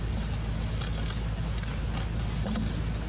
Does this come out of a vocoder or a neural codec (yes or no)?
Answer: no